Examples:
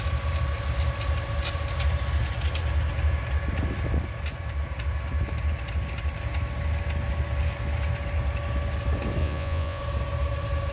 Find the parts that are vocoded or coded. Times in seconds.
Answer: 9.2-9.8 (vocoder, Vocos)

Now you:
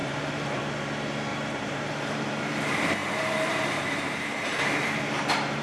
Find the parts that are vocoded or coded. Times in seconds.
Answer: 0.0-0.6 (vocoder, BigVGAN v2); 1.3-2.6; 3.0-4.6